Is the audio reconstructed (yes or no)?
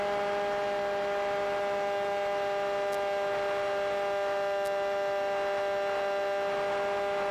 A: no